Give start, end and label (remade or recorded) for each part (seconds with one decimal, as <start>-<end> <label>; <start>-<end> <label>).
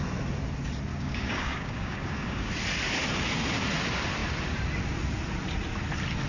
0.0-0.9 recorded; 0.9-2.5 remade; 2.5-6.3 recorded